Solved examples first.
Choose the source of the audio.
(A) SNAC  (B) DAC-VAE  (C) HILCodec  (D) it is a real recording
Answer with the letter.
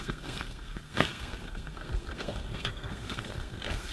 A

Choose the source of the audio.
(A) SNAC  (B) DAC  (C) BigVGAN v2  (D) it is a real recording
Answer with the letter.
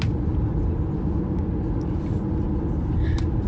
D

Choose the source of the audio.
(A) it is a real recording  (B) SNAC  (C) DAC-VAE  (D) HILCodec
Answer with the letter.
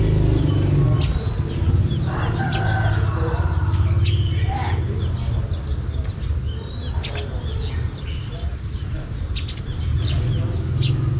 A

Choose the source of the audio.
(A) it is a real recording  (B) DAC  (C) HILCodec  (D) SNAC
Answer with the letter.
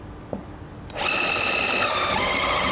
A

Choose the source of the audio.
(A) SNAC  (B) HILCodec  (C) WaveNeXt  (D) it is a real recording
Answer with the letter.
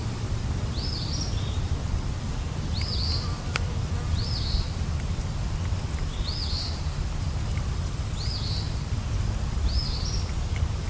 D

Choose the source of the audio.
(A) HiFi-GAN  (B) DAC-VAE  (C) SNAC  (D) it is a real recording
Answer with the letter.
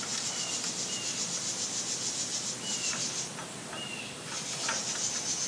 D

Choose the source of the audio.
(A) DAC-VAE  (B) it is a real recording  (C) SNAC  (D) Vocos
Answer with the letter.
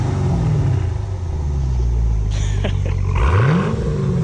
B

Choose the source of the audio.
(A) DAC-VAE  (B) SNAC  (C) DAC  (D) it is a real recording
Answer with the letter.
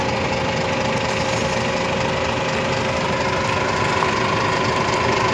D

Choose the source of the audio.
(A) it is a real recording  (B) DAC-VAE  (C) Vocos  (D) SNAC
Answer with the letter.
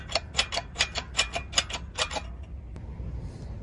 A